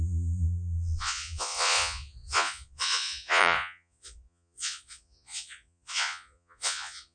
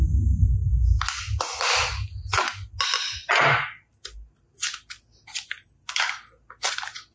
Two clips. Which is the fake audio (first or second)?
first